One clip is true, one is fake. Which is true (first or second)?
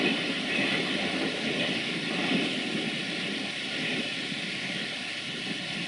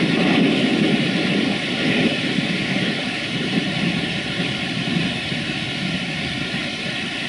first